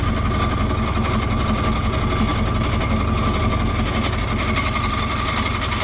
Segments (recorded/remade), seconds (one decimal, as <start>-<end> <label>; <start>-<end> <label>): 0.0-5.8 recorded